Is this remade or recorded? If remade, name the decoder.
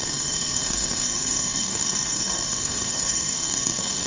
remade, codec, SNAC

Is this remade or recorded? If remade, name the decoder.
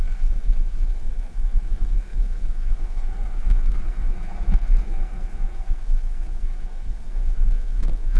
remade, codec, SNAC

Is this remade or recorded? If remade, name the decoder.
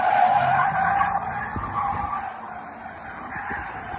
recorded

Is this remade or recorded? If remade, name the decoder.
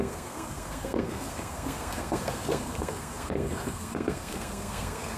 remade, codec, SNAC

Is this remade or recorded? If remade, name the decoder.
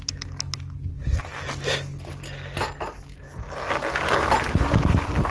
recorded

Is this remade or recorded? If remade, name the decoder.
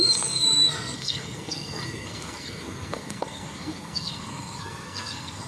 remade, codec, SNAC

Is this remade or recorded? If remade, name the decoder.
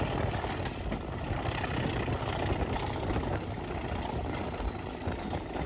recorded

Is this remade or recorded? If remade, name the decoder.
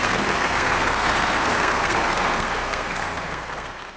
remade, codec, SNAC